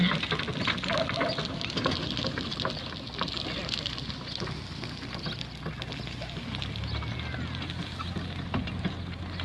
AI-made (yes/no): no